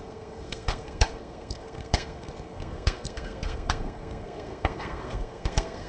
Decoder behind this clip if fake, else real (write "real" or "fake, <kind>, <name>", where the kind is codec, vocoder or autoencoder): fake, codec, SNAC